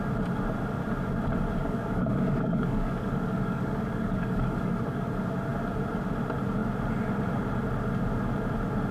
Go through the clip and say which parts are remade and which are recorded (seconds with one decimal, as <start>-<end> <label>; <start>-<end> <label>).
0.0-1.6 recorded; 1.6-5.1 remade; 5.1-8.9 recorded